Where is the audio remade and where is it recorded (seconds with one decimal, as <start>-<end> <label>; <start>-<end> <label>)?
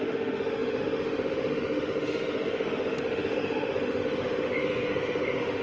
0.0-5.6 remade